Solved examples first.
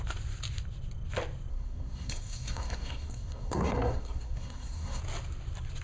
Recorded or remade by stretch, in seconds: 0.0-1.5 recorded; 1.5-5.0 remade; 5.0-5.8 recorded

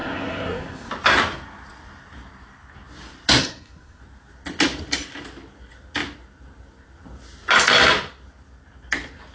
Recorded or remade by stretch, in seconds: 0.0-0.9 remade; 0.9-3.4 recorded; 3.4-4.0 remade; 4.0-9.3 recorded

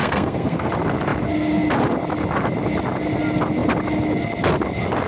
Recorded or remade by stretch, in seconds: 0.0-0.7 remade; 0.7-5.1 recorded